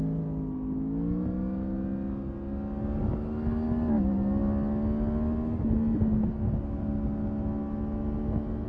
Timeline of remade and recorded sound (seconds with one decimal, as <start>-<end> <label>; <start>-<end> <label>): 0.0-8.7 recorded